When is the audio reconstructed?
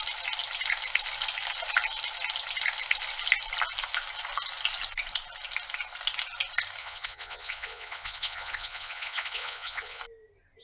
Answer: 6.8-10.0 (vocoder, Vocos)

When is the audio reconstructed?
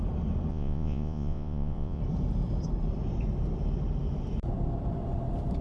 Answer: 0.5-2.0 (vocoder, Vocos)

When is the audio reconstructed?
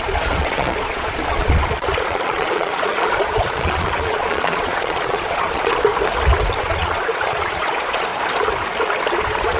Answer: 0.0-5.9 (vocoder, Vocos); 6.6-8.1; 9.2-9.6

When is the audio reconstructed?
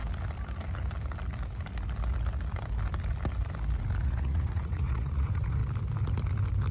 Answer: 4.0-5.6 (vocoder, Vocos)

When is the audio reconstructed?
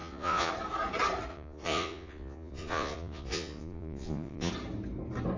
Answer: 0.0-0.5 (vocoder, Vocos); 1.3-4.5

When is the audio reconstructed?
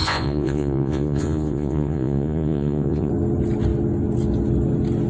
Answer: 0.0-3.1 (vocoder, Vocos)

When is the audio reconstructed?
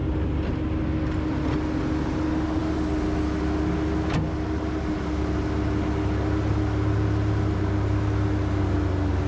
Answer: none